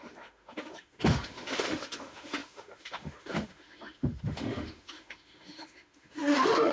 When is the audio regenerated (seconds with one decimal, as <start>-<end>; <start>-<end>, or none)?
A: 0.0-6.7